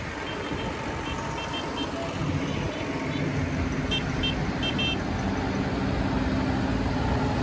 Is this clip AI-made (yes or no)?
no